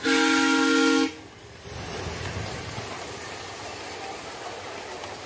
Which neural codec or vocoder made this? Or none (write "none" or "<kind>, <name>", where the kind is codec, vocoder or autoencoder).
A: none